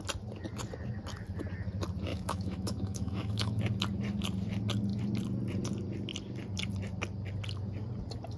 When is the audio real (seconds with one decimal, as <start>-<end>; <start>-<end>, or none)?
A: 0.0-2.1; 3.6-8.4